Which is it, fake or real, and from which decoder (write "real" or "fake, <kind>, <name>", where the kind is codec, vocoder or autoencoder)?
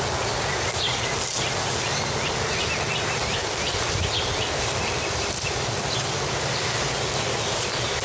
real